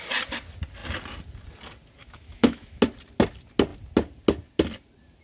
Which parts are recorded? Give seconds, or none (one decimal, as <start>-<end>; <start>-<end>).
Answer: 0.0-2.0; 2.8-5.2